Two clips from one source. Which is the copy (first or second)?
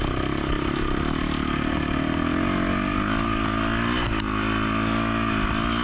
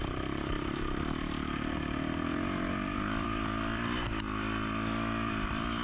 second